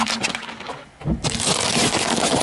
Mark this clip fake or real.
real